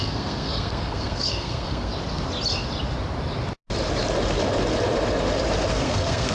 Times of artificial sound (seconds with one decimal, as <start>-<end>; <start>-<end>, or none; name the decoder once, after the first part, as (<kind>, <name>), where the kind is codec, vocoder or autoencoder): 0.0-1.9 (codec, SNAC); 5.7-6.3